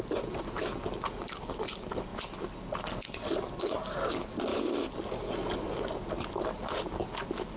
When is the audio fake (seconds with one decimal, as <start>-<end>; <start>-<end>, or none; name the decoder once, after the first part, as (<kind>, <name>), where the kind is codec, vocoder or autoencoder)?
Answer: none